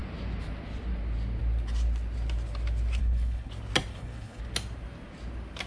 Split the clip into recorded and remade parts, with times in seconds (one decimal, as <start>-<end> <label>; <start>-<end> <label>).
0.0-3.0 recorded; 3.0-3.5 remade; 3.5-3.9 recorded; 3.9-4.4 remade; 4.4-5.7 recorded